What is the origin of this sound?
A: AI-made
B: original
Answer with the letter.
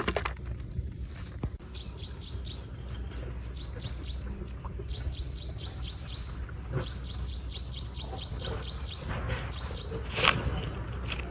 B